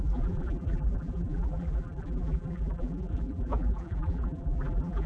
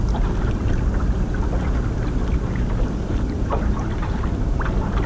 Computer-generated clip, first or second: first